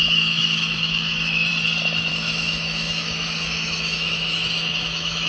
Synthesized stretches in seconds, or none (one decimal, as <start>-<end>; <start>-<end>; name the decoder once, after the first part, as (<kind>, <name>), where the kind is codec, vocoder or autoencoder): 0.0-1.5 (autoencoder, DAC-VAE); 2.1-5.3